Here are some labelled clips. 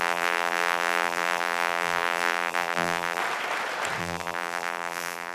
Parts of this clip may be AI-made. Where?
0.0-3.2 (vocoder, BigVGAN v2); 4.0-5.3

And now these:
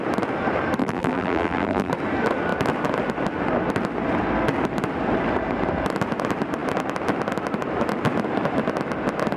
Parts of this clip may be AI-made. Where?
0.8-1.9 (vocoder, BigVGAN v2)

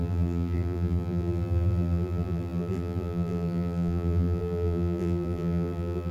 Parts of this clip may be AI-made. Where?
0.0-6.1 (vocoder, BigVGAN v2)

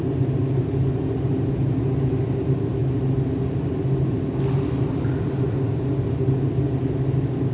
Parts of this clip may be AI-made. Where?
none

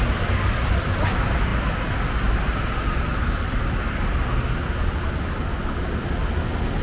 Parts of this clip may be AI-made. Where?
none

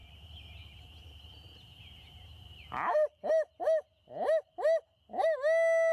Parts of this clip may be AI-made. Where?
0.0-3.3 (vocoder, BigVGAN v2)